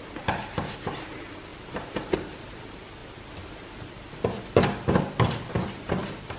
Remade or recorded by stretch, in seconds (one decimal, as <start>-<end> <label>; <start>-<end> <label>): 0.0-6.4 recorded